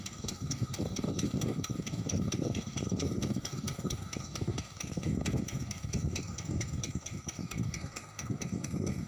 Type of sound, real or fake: fake